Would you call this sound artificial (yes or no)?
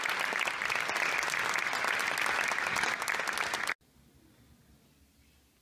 no